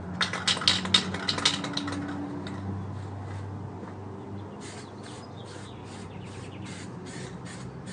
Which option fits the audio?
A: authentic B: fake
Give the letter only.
A